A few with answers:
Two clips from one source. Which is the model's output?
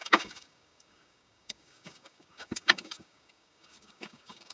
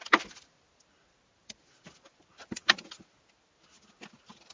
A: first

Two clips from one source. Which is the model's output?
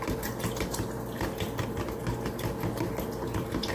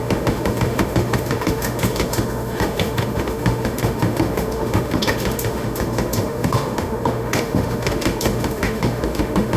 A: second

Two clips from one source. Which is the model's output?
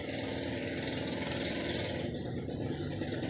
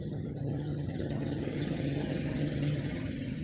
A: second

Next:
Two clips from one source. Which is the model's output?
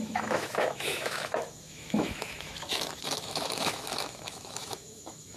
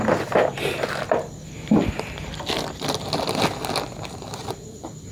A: first